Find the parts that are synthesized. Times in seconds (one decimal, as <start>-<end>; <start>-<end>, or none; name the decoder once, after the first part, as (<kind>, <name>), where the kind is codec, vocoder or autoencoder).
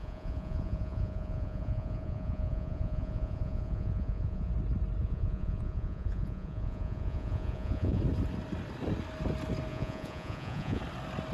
0.0-4.5 (vocoder, Vocos); 5.0-8.0; 9.7-10.8